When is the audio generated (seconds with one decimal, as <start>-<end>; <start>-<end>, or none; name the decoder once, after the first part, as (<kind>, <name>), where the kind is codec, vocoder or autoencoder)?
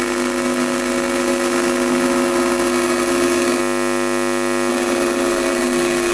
0.0-3.6 (codec, SNAC); 4.7-6.1